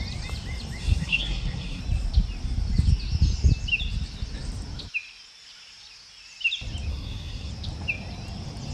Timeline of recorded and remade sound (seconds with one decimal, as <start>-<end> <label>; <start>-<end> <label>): 0.0-0.8 recorded; 0.8-1.8 remade; 1.8-6.9 recorded; 6.9-7.5 remade; 7.5-8.7 recorded